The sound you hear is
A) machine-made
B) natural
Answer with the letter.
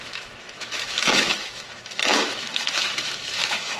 A